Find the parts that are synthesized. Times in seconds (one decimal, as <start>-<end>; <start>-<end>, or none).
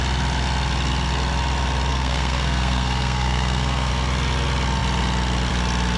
1.9-3.9